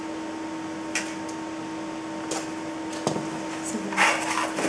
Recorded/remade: recorded